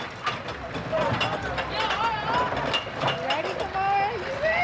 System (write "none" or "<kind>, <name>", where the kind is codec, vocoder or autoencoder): none